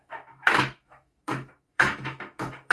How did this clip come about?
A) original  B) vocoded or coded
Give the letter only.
B